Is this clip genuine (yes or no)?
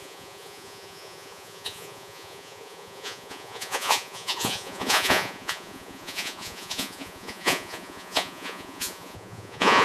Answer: no